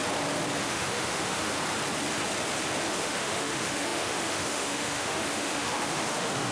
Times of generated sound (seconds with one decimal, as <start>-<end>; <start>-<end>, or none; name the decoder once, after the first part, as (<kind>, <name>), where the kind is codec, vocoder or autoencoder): 0.6-1.5 (autoencoder, DAC-VAE); 2.9-6.5